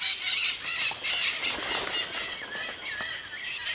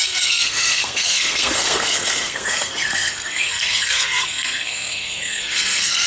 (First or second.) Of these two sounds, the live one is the first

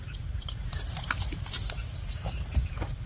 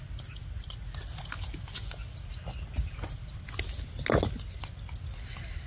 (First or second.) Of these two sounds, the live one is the second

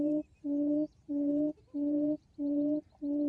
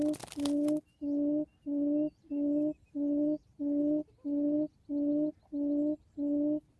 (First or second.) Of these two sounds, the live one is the second